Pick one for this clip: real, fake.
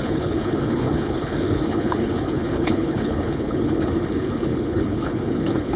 fake